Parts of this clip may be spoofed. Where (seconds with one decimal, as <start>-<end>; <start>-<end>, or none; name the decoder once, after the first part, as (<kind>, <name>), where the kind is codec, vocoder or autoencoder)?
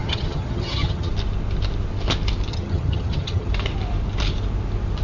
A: 0.0-1.1 (vocoder, HiFi-GAN); 2.5-3.5